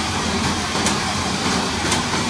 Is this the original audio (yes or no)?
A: no